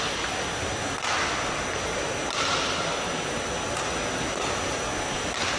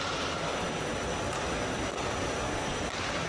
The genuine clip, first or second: first